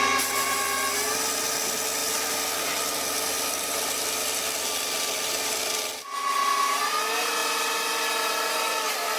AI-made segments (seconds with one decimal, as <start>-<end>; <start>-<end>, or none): none